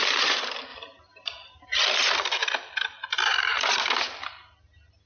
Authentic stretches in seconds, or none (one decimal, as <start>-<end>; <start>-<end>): 0.0-0.7; 1.8-3.3; 3.9-5.1